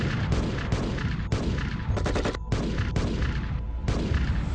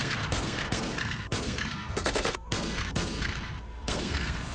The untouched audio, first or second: first